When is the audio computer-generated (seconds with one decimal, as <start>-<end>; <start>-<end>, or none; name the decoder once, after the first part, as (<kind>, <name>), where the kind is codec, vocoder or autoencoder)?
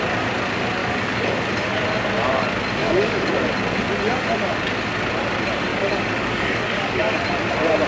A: 0.8-1.4 (codec, DAC); 2.8-3.3; 5.7-7.2